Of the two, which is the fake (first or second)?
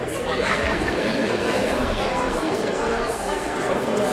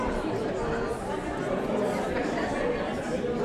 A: first